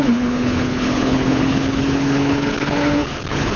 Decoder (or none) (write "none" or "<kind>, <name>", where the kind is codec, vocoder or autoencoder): codec, HILCodec